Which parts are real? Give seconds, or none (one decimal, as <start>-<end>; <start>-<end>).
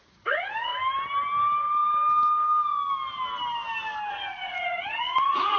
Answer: 0.7-4.1